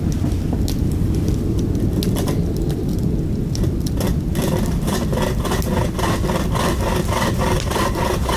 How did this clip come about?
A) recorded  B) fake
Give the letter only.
A